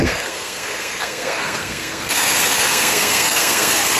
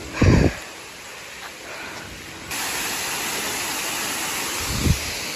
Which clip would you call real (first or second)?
second